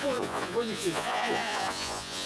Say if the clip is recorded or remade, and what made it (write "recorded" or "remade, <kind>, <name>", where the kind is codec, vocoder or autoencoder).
remade, vocoder, Vocos